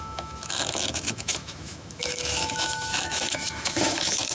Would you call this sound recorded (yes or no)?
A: no